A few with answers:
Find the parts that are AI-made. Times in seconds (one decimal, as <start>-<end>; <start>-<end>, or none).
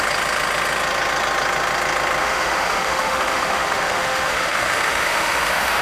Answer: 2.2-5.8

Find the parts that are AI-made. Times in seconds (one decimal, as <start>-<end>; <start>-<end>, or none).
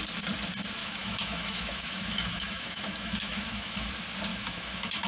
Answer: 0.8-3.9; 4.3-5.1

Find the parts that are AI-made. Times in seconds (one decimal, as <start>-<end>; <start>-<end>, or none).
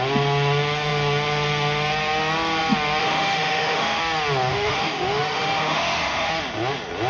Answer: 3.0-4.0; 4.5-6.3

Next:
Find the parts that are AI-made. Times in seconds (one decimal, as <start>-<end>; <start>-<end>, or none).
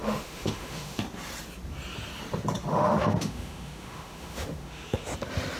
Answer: 0.0-1.0; 2.7-5.1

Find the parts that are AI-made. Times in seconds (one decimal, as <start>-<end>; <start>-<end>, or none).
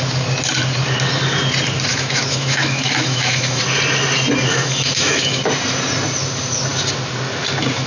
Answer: 1.9-3.6; 4.5-5.4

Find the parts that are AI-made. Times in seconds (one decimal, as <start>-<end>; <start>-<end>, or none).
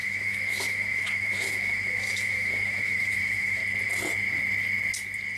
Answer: 0.0-3.6